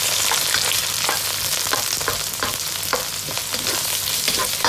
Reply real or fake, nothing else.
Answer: real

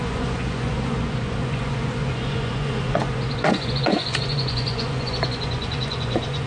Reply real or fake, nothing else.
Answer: fake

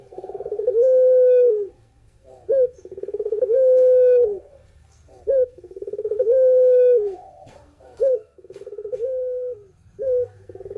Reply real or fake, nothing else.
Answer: fake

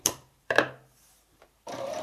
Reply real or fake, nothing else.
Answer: fake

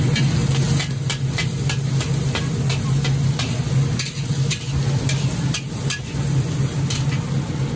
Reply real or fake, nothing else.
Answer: real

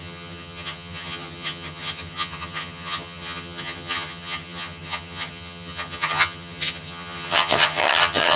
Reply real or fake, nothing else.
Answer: fake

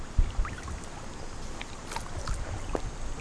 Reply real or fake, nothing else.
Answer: real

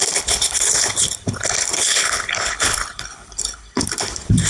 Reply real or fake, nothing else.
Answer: fake